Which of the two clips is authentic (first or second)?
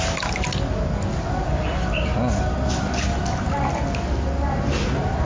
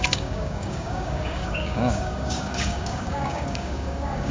first